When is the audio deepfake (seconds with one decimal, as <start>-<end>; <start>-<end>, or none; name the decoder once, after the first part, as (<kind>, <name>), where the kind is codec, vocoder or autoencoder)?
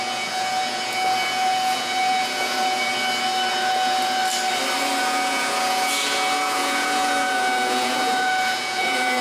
0.0-2.9 (vocoder, Vocos); 3.5-4.2; 5.0-9.2